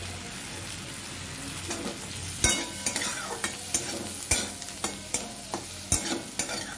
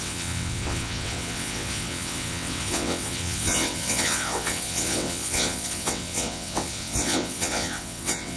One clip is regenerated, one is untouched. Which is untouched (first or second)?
first